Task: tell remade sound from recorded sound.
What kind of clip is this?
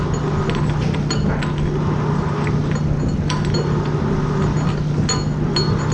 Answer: recorded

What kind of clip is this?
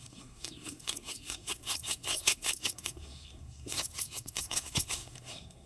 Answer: remade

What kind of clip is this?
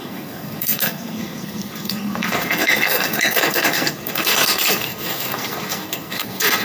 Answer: remade